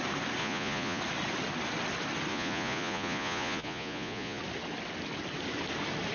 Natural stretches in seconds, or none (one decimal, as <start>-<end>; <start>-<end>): 0.0-0.4; 1.0-2.3; 4.4-6.1